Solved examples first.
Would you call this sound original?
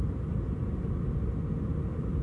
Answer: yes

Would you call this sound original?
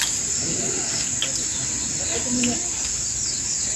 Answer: yes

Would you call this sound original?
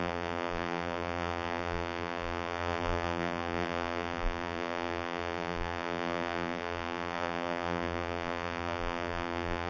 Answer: no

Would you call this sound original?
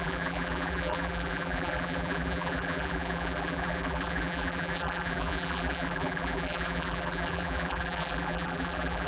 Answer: no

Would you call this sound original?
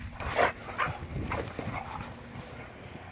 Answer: yes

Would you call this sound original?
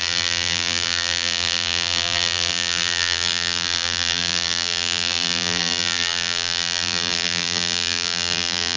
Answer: no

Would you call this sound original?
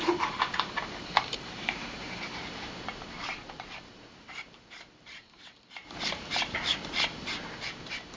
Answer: no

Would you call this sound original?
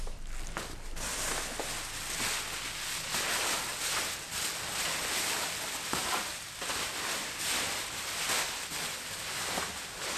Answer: yes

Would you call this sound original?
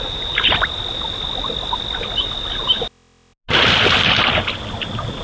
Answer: yes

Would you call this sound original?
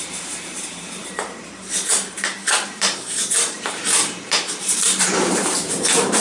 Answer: no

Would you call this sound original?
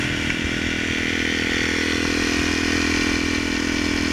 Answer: yes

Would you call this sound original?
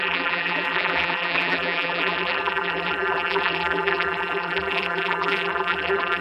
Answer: no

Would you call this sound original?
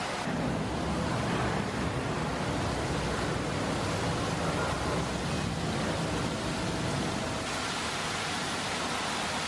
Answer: yes